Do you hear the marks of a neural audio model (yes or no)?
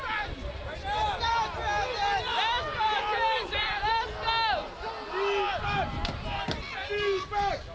no